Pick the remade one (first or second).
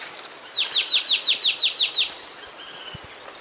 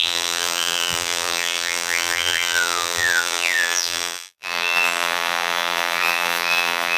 second